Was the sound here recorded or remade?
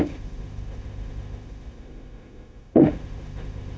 remade